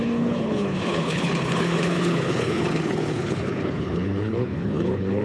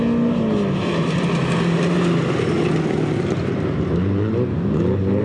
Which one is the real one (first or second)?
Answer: second